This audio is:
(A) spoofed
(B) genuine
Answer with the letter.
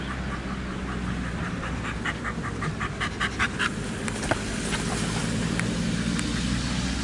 B